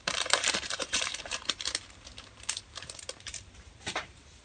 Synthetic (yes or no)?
yes